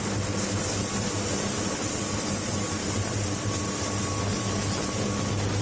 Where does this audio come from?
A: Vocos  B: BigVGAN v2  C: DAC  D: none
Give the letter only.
D